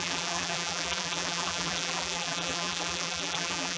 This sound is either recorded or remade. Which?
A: remade